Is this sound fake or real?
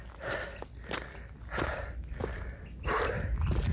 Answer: real